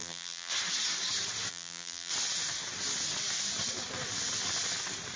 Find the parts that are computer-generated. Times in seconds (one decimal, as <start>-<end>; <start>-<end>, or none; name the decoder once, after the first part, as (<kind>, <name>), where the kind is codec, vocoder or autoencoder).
0.0-0.5 (vocoder, BigVGAN v2); 1.5-2.1